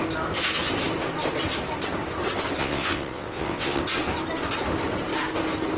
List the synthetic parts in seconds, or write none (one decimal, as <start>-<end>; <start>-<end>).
2.6-3.8